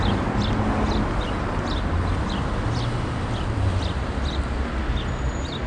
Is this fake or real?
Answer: real